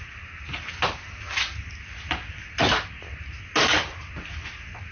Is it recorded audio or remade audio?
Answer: recorded